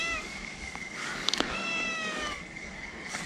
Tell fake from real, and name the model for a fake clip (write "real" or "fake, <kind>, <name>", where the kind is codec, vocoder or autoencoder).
fake, codec, DAC